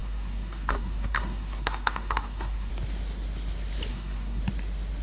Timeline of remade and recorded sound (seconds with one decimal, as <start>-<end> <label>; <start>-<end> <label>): 0.0-2.7 remade; 2.7-3.9 recorded; 3.9-4.4 remade; 4.4-5.0 recorded